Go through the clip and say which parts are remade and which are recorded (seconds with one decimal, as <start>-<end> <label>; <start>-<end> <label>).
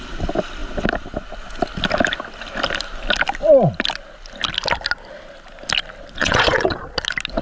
0.0-6.2 recorded; 6.2-6.8 remade; 6.8-7.4 recorded